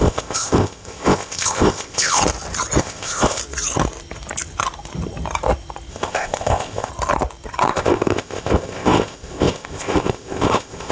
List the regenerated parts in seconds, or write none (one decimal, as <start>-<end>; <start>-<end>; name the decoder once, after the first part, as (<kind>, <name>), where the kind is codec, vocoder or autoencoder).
0.0-2.2 (codec, ZipCodec); 2.8-3.4; 5.9-6.9; 7.7-10.9